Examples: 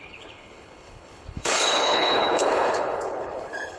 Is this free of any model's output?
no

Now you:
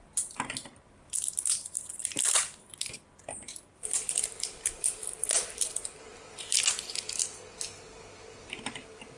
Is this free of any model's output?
yes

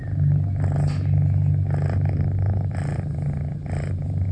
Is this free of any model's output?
yes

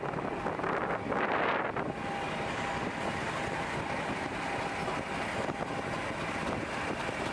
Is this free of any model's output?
yes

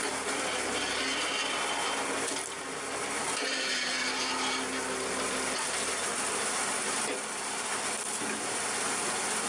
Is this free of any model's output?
yes